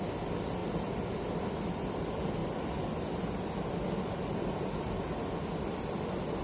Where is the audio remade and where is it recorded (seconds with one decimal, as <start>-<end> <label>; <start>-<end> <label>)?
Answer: 0.0-6.4 recorded